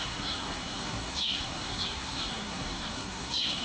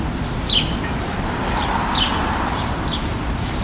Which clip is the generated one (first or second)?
first